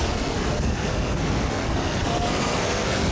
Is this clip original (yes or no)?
no